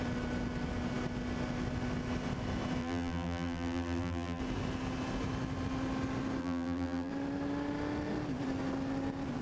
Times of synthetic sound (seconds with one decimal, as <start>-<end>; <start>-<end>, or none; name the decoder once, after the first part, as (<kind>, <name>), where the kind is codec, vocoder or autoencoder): 2.8-4.4 (vocoder, BigVGAN v2); 6.4-7.1